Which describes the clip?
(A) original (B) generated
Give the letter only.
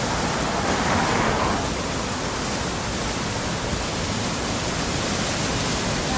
A